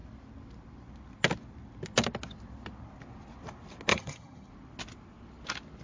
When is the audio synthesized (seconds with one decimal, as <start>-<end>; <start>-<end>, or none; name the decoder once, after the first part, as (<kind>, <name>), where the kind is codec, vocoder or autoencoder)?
3.9-4.5 (vocoder, HiFi-GAN)

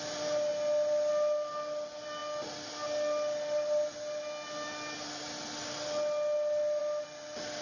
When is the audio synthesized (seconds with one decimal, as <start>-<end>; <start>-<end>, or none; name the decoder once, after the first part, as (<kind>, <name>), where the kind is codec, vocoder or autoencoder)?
none

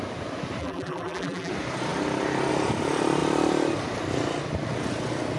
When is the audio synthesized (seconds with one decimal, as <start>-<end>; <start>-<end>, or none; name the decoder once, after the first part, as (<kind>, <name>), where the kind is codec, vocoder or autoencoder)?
0.6-1.5 (vocoder, BigVGAN v2)

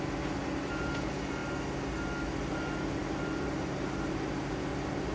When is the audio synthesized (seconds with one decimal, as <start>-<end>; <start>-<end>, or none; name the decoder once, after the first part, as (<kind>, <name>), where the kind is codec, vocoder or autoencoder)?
none